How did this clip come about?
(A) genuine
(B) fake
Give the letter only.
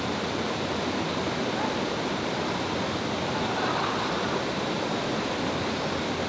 A